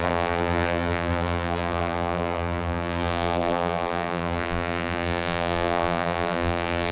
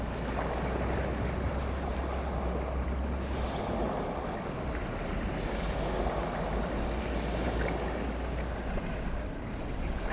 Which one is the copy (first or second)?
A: first